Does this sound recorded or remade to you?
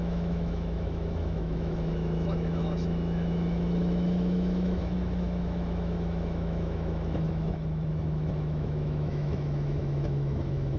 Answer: remade